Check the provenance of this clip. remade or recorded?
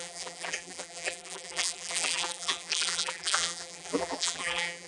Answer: remade